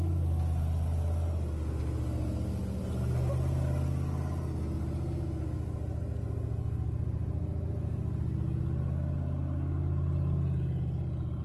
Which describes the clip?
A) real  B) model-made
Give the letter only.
A